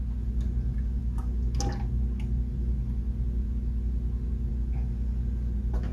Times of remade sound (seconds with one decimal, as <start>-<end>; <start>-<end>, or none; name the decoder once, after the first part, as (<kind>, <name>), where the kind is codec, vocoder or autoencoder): none

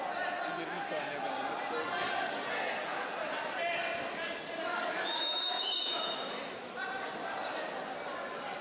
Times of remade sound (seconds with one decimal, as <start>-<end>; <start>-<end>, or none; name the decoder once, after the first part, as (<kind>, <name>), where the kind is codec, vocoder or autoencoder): 4.7-6.3 (autoencoder, DAC-VAE)